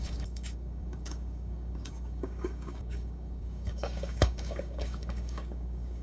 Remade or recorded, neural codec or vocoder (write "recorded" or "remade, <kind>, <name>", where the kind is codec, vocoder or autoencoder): remade, codec, DAC